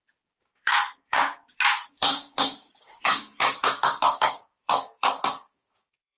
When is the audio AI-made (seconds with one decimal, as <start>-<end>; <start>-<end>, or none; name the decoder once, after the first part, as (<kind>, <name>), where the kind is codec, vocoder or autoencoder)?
0.0-6.2 (codec, DAC)